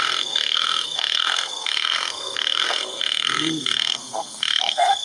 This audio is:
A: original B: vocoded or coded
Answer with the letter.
B